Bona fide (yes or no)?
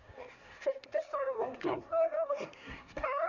no